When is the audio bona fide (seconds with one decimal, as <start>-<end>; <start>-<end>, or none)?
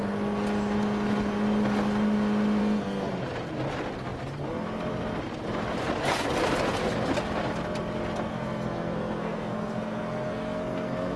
0.0-2.6; 3.1-8.3